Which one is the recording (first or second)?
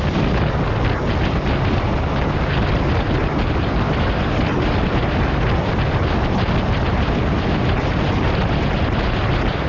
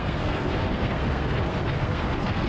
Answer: first